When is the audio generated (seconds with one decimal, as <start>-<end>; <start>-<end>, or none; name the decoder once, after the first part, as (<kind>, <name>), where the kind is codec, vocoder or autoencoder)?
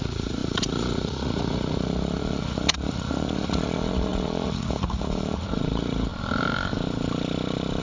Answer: 0.0-6.1 (vocoder, Vocos)